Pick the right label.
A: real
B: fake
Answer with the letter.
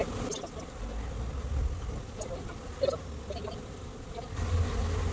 A